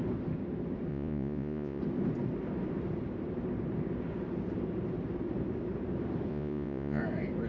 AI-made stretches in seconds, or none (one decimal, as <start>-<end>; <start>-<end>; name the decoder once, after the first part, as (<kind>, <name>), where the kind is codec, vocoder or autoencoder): 0.9-1.8 (vocoder, Vocos); 6.3-7.0